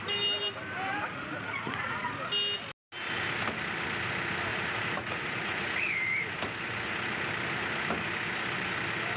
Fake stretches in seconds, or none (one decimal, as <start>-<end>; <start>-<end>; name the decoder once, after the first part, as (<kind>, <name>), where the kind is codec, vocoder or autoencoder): 1.1-2.1 (vocoder, Vocos); 4.5-5.9